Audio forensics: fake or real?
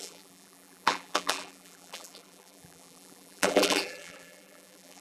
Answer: fake